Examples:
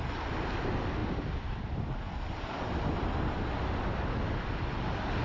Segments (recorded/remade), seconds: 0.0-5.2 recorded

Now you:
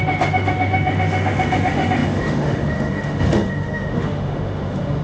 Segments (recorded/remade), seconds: 0.0-5.0 remade

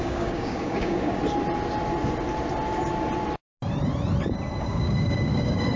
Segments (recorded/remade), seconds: 0.0-1.2 remade; 1.2-4.7 recorded; 4.7-5.8 remade

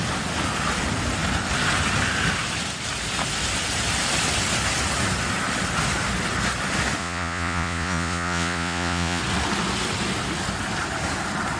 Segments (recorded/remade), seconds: 0.0-7.0 recorded; 7.0-9.2 remade; 9.2-11.6 recorded

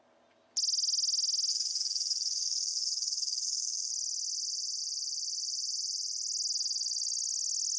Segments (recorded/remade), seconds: 0.0-1.5 recorded; 1.5-3.9 remade; 3.9-7.8 recorded

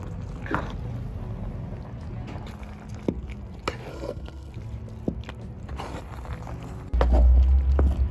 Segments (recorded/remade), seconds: 0.0-3.9 recorded; 3.9-4.5 remade; 4.5-8.1 recorded